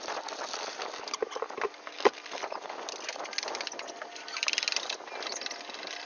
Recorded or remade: recorded